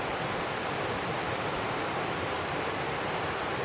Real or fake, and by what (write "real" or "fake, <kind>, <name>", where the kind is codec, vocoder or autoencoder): real